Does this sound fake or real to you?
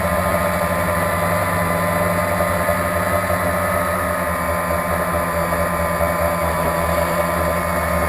real